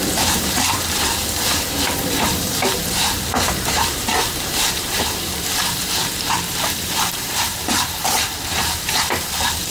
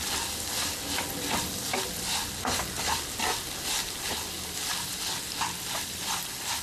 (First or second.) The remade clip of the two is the first